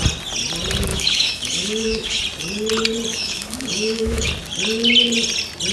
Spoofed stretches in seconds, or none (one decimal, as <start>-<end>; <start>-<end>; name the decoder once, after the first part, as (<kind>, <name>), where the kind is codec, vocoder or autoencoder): 0.9-2.2 (autoencoder, DAC-VAE); 3.1-4.3